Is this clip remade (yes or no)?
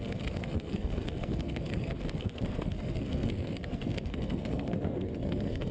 yes